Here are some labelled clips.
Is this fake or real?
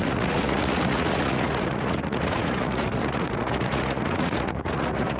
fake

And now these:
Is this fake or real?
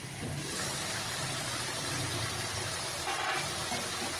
real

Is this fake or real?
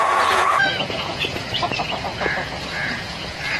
fake